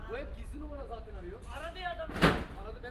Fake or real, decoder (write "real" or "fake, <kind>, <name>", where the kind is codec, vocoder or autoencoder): real